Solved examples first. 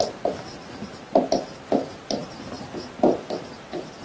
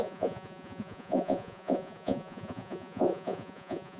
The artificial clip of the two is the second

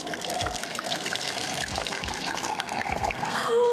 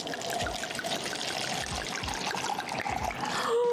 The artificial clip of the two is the first